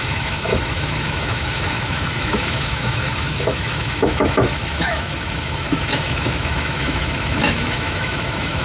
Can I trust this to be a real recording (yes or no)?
no